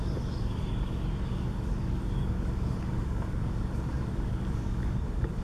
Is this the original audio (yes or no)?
no